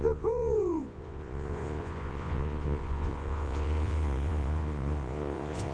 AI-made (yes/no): yes